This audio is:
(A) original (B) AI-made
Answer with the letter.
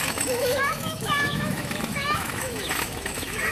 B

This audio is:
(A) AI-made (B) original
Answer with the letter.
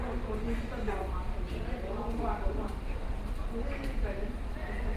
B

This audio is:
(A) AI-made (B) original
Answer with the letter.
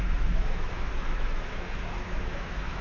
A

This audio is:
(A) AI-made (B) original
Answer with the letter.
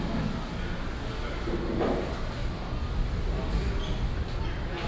B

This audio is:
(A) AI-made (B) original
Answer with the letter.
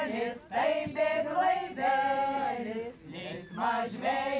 B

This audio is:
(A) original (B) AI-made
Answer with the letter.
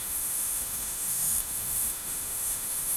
B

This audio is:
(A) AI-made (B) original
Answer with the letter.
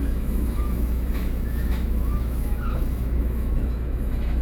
A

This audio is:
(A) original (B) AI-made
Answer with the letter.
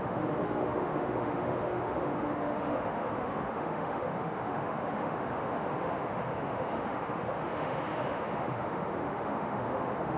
B